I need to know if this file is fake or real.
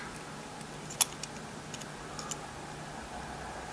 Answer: real